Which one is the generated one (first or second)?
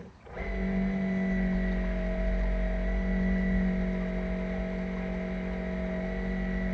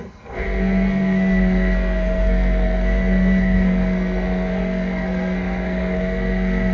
second